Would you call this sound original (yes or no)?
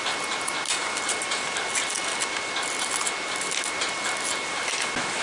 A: yes